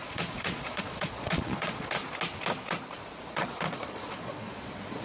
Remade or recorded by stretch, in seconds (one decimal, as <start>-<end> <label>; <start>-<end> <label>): 0.0-2.0 remade; 2.0-3.3 recorded; 3.3-5.0 remade